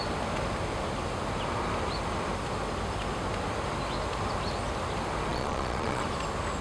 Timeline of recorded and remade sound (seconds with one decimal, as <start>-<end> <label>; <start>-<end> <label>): 0.0-5.3 recorded; 5.3-6.0 remade; 6.0-6.6 recorded